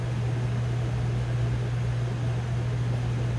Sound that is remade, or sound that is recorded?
recorded